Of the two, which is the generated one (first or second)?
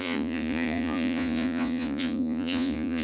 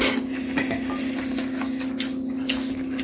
first